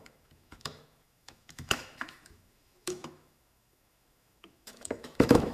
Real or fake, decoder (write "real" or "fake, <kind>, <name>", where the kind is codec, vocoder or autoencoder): fake, autoencoder, DAC-VAE